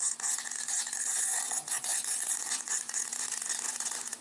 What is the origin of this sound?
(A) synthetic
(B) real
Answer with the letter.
A